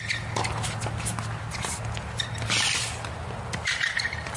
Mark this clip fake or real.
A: real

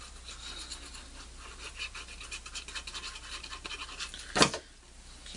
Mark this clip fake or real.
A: real